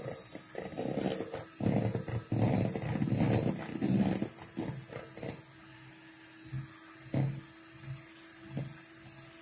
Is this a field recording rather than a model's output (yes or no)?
yes